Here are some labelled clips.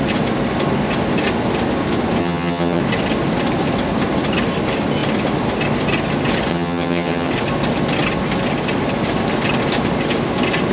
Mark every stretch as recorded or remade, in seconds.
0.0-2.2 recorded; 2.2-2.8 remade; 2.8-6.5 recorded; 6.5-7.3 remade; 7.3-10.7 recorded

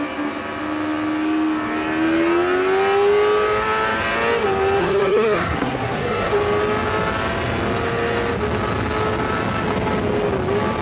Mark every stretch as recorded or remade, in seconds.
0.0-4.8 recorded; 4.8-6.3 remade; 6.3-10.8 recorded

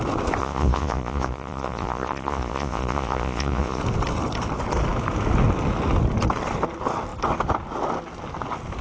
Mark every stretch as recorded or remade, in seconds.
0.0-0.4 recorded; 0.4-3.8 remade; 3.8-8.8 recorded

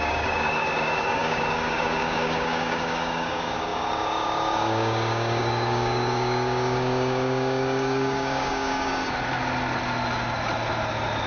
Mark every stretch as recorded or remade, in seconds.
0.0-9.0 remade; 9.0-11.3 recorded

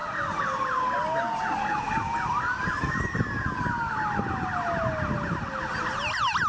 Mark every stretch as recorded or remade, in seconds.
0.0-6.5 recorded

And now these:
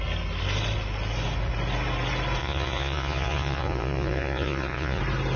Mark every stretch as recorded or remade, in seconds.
0.0-2.4 recorded; 2.4-5.0 remade; 5.0-5.4 recorded

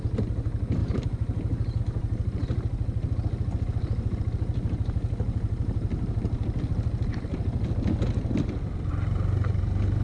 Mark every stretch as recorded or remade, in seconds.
0.0-10.0 recorded